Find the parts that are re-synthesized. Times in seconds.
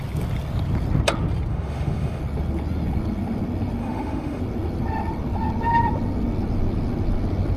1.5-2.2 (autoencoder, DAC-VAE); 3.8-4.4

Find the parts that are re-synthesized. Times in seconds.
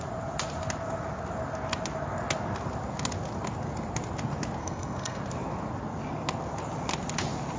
4.6-5.2 (codec, SNAC)